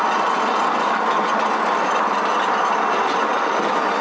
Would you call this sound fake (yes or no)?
no